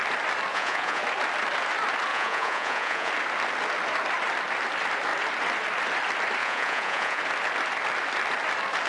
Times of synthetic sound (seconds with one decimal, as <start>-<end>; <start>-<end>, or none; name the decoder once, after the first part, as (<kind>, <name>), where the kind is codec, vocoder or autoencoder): 0.5-1.0 (vocoder, Vocos); 2.1-3.1; 6.4-7.2